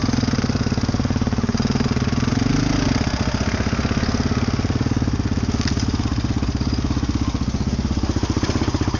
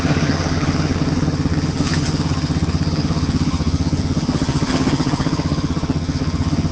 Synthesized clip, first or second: second